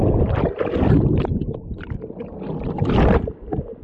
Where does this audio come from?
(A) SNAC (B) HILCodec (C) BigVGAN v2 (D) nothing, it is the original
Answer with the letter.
D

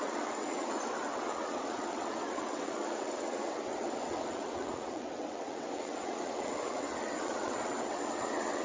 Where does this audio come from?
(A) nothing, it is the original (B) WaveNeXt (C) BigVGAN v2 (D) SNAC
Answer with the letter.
B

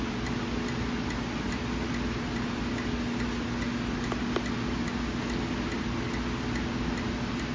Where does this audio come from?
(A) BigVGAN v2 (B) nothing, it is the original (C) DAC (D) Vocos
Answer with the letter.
B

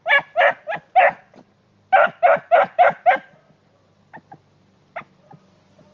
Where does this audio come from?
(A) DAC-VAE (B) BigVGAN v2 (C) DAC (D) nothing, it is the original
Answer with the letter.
D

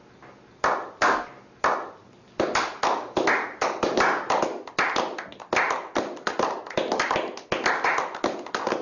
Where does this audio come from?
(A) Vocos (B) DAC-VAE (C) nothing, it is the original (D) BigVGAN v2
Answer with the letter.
C